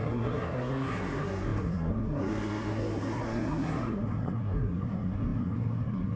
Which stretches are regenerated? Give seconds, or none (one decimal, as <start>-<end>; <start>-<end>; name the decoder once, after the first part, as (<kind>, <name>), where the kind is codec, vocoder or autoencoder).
0.0-6.2 (codec, SNAC)